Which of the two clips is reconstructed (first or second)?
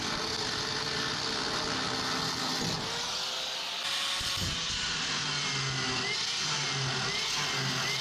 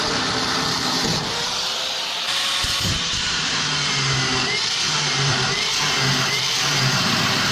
second